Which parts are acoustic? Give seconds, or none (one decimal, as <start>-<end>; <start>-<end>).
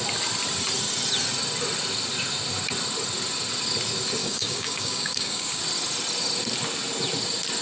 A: 0.0-4.2; 5.6-7.6